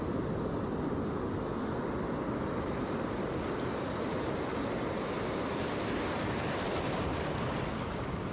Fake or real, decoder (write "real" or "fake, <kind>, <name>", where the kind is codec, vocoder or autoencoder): real